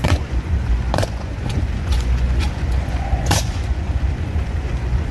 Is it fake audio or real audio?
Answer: fake